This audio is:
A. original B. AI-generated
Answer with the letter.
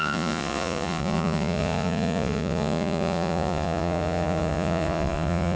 B